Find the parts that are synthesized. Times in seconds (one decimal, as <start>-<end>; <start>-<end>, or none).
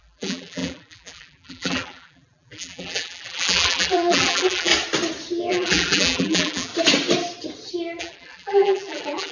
0.0-4.7; 5.5-6.7; 8.0-9.3